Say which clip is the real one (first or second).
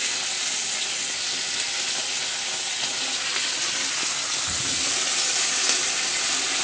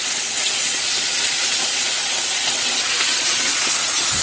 first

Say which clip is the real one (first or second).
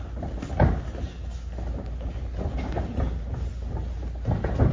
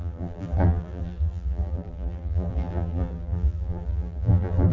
first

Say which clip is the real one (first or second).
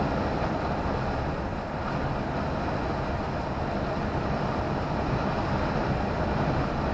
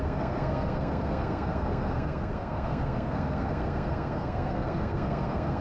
first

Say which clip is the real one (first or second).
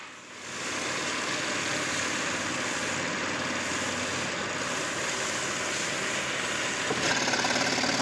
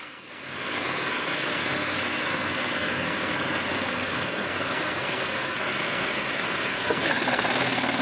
first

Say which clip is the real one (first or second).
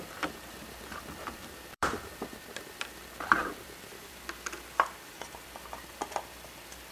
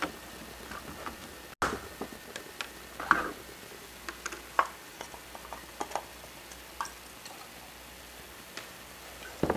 second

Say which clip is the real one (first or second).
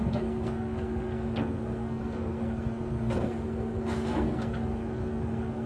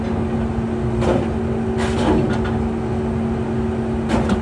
second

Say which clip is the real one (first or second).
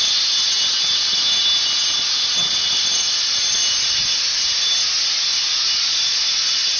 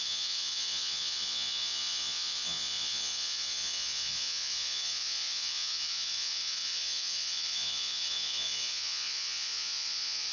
first